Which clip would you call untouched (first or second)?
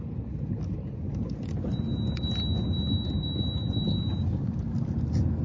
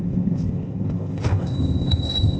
first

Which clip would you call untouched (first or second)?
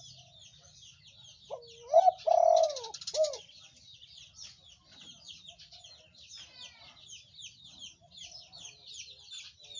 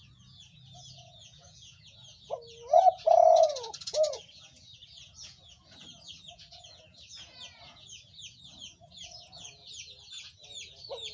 first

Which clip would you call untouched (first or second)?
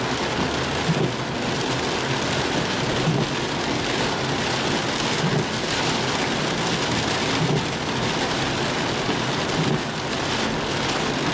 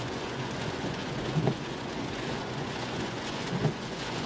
first